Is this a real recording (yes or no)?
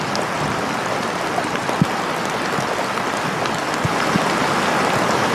yes